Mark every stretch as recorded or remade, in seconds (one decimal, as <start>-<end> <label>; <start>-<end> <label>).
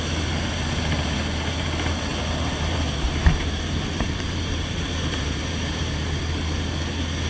0.0-2.1 recorded; 2.1-6.2 remade; 6.2-7.3 recorded